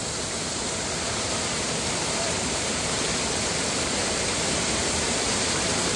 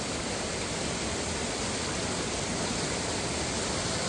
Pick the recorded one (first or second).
second